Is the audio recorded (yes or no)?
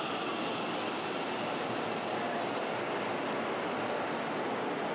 yes